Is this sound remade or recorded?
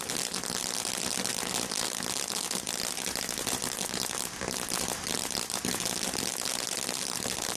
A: recorded